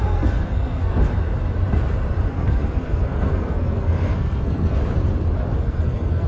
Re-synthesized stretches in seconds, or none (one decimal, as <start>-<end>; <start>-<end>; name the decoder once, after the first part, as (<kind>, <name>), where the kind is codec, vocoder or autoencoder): 0.0-1.0 (codec, SNAC); 2.3-4.8; 5.6-6.3